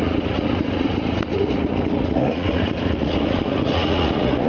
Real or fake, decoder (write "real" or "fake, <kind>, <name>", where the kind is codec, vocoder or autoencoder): fake, vocoder, Vocos